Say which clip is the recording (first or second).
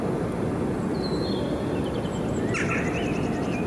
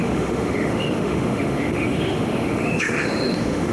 first